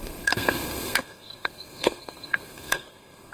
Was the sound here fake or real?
fake